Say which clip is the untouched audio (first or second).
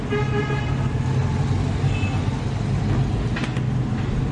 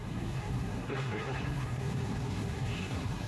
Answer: first